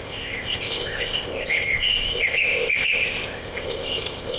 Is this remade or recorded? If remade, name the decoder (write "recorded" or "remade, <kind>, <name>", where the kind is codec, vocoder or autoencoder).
remade, codec, ZipCodec